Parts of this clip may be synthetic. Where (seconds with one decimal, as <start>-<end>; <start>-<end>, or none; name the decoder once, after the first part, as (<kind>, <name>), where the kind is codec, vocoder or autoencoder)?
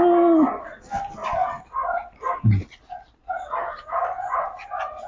none